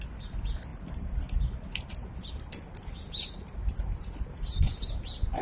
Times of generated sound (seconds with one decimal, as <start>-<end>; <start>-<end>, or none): none